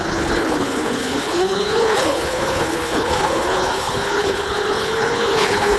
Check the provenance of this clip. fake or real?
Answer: fake